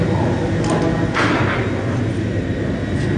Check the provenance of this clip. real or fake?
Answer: real